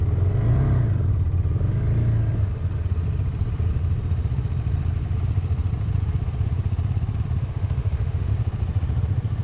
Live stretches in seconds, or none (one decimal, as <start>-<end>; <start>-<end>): 0.0-7.4; 8.3-9.4